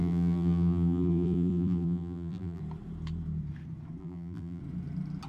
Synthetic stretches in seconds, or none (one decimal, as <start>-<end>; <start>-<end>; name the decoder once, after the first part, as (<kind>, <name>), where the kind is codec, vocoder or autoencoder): 0.0-2.6 (vocoder, BigVGAN v2); 4.0-4.6